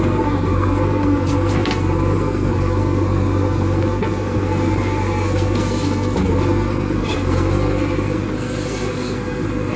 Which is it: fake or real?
fake